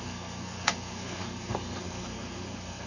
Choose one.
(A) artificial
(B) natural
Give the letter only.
A